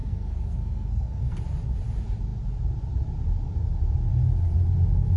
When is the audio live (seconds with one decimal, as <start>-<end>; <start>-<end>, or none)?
1.4-5.2

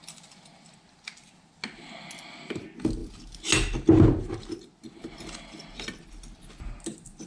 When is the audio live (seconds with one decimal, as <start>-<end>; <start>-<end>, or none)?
0.0-7.3

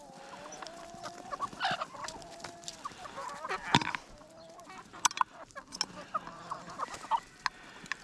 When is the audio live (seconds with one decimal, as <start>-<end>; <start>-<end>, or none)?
0.0-8.0

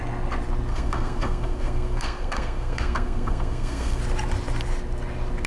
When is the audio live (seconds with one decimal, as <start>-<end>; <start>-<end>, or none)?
0.0-0.7; 4.0-5.5